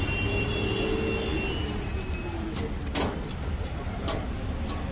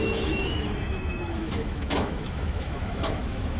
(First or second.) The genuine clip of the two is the first